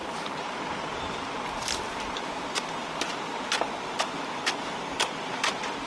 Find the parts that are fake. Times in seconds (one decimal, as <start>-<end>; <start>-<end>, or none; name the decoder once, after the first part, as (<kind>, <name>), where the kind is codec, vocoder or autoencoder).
0.0-3.5 (vocoder, BigVGAN v2)